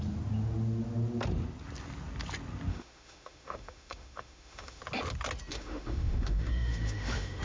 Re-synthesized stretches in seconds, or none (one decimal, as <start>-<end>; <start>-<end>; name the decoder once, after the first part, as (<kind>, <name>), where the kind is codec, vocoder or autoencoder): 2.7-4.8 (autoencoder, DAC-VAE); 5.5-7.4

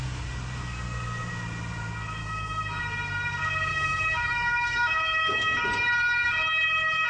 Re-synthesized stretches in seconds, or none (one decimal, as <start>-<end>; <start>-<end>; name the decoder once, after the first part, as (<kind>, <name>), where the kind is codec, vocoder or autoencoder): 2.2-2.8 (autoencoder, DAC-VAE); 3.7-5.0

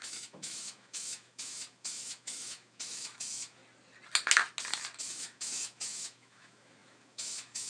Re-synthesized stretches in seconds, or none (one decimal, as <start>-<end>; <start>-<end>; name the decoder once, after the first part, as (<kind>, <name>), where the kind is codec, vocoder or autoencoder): 0.0-3.6 (autoencoder, DAC-VAE); 5.0-7.7

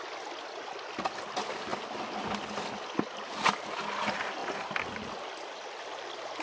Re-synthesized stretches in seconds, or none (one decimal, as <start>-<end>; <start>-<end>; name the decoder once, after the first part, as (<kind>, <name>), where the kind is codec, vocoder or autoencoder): none